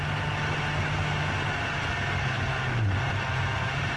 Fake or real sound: real